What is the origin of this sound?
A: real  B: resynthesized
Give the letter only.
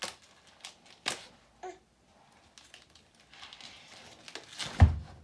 A